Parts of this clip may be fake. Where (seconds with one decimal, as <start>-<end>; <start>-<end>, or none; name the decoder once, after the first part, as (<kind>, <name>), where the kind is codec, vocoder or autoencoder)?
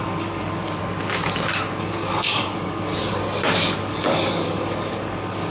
0.0-0.8 (codec, DAC); 1.8-3.2; 3.8-5.5